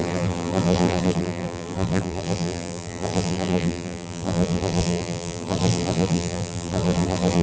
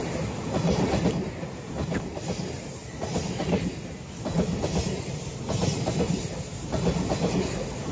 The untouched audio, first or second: second